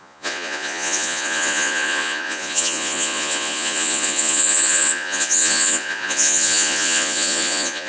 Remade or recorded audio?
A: remade